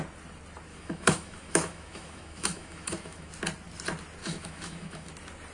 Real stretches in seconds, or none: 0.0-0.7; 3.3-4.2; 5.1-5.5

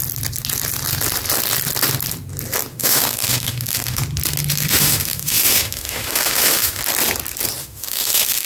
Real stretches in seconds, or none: 0.0-2.7; 4.0-4.5; 6.8-7.6

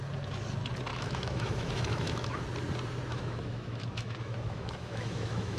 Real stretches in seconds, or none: 0.0-0.9; 2.4-3.1

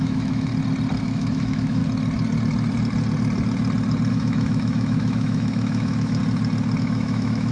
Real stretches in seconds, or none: 0.5-1.0; 1.8-4.1; 6.2-6.8

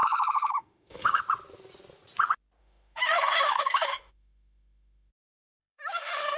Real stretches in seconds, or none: 1.2-2.6; 5.1-5.6

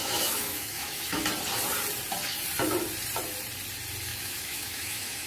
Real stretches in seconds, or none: 1.2-4.1

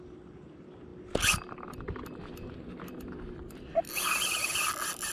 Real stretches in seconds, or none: 0.0-5.1

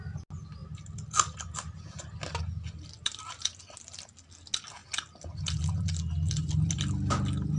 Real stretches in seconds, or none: 0.0-7.6